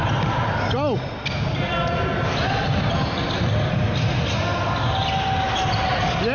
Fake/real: real